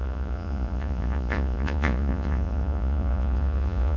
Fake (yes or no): yes